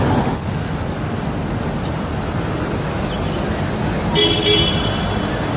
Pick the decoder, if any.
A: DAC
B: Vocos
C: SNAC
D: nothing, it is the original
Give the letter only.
D